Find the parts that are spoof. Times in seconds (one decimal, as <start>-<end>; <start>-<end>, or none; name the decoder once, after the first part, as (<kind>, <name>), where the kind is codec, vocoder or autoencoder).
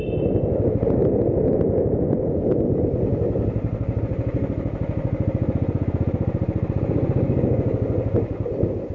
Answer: none